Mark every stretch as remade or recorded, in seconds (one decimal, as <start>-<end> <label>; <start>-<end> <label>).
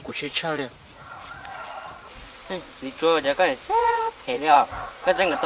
0.0-2.4 remade; 2.4-3.8 recorded; 3.8-5.5 remade